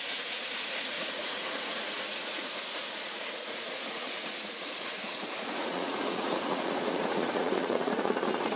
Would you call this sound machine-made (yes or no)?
yes